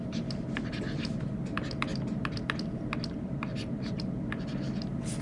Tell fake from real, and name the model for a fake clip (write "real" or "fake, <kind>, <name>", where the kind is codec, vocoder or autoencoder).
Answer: real